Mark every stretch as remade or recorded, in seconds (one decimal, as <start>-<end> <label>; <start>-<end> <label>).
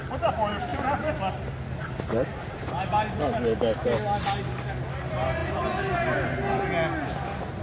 0.0-0.7 recorded; 0.7-1.2 remade; 1.2-7.6 recorded